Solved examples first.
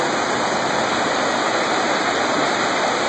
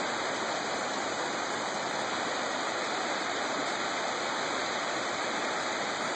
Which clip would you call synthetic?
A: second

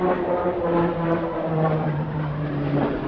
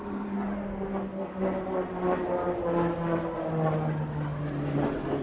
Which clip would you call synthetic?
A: first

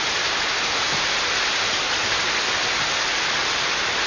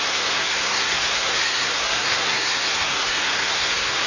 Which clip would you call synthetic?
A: second